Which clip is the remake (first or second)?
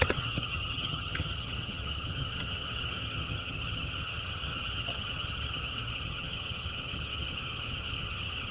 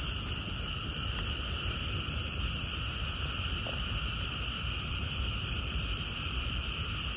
first